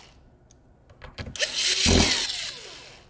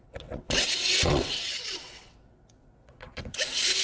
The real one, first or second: first